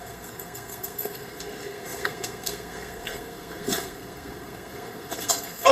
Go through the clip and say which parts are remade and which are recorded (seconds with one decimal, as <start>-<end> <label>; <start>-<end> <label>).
0.0-5.7 remade